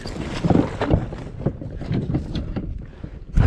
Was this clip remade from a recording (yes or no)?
yes